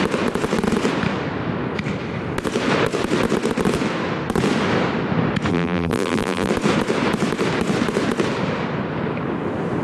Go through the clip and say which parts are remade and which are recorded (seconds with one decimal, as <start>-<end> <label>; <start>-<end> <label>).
0.0-5.5 recorded; 5.5-6.5 remade; 6.5-9.8 recorded